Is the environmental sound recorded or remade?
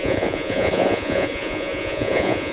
remade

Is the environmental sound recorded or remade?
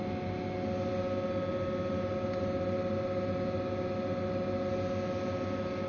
recorded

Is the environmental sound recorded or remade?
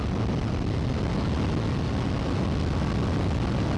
recorded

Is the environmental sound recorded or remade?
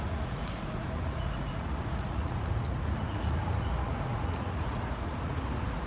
remade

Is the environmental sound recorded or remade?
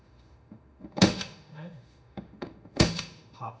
remade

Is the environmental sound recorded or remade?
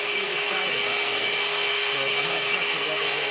remade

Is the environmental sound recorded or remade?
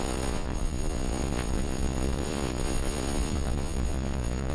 remade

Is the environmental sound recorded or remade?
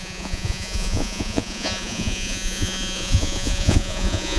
remade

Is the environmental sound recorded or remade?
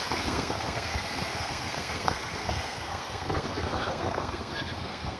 remade